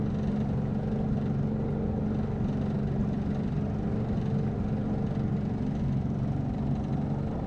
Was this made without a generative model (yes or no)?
yes